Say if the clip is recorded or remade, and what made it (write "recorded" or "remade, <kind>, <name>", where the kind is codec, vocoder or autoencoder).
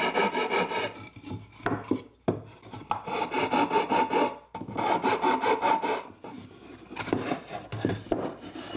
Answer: recorded